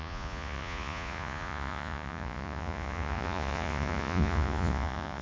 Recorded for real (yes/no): no